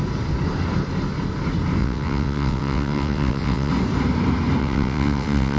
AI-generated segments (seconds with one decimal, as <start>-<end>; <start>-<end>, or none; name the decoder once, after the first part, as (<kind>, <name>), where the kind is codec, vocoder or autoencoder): 1.8-3.7 (vocoder, WaveNeXt); 4.6-5.6